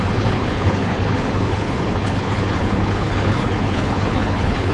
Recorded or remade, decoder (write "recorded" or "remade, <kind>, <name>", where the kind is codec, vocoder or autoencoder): remade, codec, HILCodec